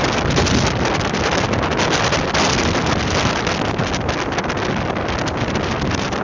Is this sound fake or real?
real